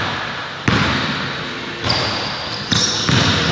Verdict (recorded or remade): recorded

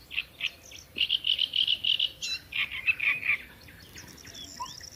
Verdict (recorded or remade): recorded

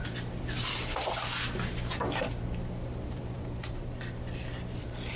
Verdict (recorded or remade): remade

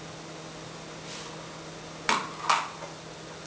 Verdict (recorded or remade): recorded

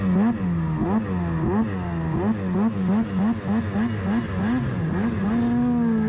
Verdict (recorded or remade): recorded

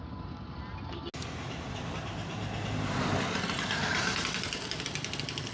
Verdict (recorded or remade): recorded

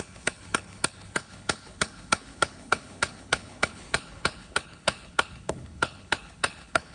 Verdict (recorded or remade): remade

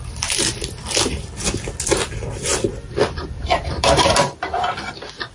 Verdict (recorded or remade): remade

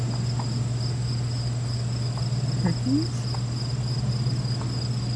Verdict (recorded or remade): recorded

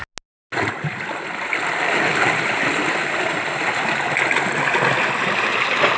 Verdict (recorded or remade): recorded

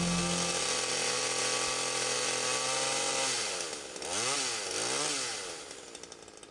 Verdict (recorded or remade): recorded